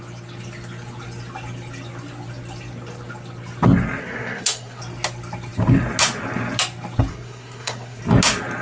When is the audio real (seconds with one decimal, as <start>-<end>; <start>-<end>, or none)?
0.0-4.0; 4.8-7.1; 8.0-8.6